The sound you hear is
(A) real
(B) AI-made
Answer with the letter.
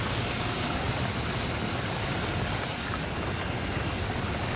A